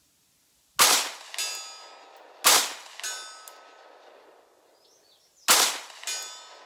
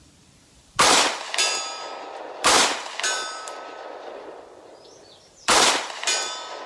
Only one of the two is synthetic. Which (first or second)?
second